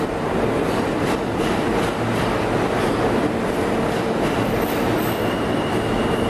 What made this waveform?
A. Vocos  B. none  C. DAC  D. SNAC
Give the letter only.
B